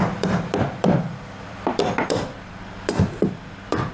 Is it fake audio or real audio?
fake